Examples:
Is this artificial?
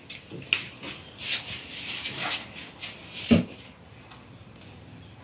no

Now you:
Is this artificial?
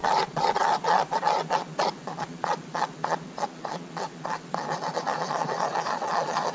yes